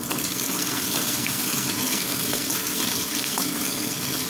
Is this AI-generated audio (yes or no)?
yes